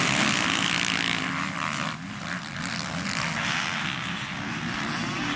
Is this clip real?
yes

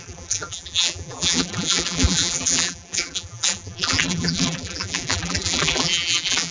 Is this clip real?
no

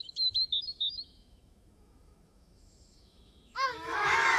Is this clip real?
no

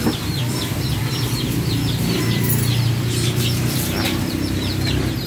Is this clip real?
no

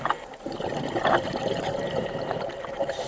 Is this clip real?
yes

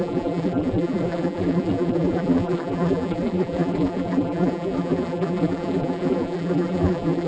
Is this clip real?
no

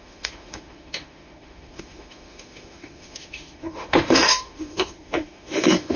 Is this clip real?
no